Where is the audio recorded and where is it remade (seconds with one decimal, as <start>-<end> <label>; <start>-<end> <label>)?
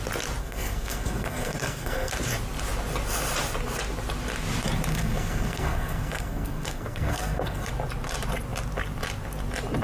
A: 0.0-0.4 recorded; 0.4-2.1 remade; 2.1-4.9 recorded; 4.9-7.7 remade; 7.7-9.8 recorded